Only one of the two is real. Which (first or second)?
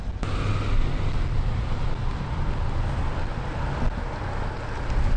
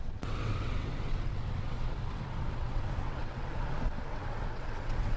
first